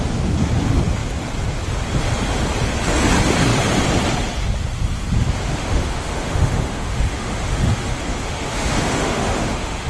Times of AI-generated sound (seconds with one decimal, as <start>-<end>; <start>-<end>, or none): 5.5-9.9